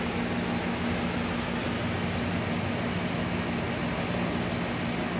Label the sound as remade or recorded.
recorded